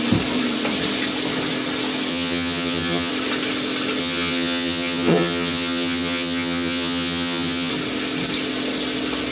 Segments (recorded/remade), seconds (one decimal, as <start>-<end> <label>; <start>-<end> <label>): 0.0-2.1 recorded; 2.1-3.1 remade; 3.1-4.0 recorded; 4.0-7.7 remade; 7.7-9.3 recorded